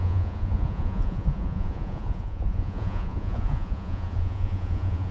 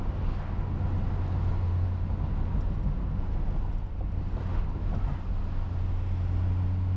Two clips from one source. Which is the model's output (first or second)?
first